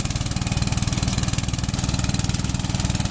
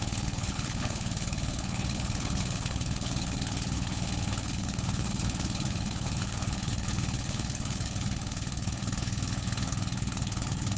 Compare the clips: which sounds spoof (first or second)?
second